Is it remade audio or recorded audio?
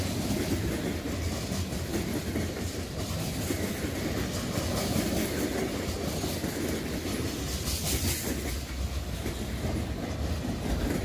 recorded